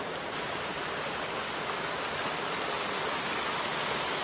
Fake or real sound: real